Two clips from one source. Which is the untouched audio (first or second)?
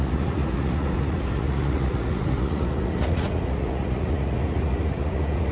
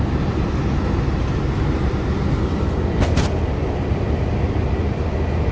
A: second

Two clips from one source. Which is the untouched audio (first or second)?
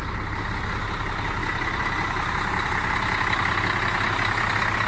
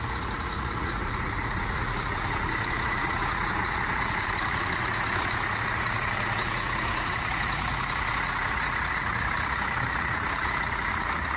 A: first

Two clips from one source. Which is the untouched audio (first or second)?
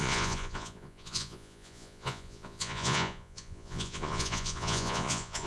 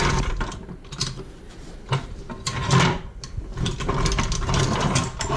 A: second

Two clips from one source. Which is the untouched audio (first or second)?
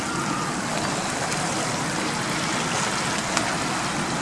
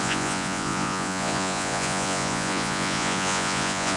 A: first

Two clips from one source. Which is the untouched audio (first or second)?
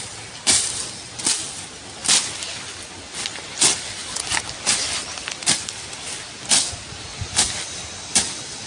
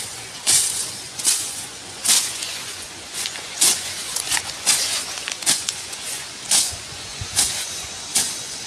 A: first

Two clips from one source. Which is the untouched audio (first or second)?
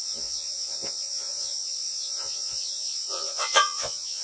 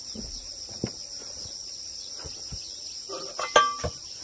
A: second